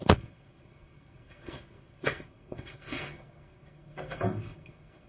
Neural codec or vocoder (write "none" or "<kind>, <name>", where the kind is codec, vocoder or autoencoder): codec, SNAC